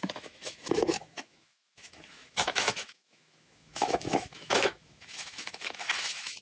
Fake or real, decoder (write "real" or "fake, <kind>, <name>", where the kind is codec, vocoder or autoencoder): fake, autoencoder, DAC-VAE